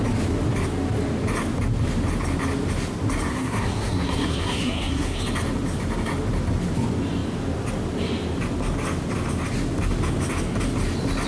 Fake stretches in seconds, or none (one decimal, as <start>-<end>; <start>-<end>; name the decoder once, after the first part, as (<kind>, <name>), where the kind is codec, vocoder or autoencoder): 3.3-5.2 (codec, SNAC)